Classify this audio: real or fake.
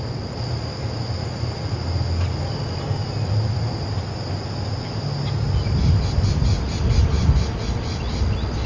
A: real